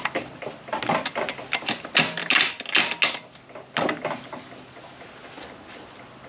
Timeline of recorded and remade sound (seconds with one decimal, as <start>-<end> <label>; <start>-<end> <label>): 0.0-6.3 recorded